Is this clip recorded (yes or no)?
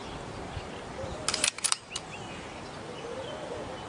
yes